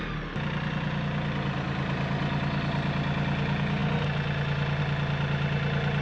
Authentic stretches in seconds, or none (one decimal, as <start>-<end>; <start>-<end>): 0.0-6.0